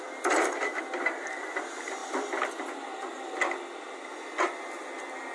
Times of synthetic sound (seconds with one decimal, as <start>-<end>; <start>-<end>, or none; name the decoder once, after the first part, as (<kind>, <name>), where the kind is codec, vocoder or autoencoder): none